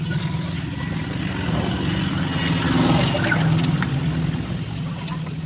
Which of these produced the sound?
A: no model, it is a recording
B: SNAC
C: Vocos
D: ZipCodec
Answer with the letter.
A